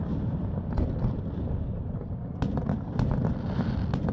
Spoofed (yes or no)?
no